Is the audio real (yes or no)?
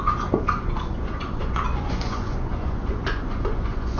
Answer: no